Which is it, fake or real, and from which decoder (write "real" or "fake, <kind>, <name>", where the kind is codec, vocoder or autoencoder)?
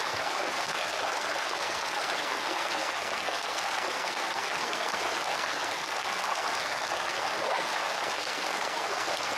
fake, codec, SNAC